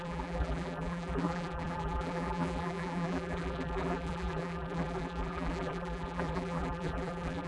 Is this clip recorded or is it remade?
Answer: remade